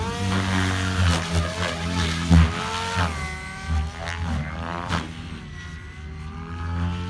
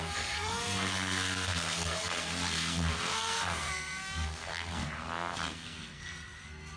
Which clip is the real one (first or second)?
first